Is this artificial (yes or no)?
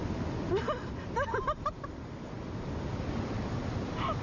no